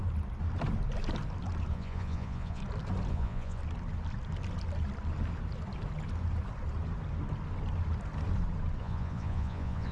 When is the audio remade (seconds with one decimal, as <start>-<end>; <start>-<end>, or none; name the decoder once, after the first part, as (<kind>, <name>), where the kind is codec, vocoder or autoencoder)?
1.7-2.6 (vocoder, Vocos); 3.1-3.6; 8.8-9.9